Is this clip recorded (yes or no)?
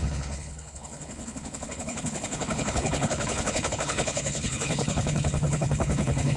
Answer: no